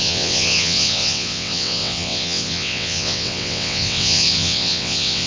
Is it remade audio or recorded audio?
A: remade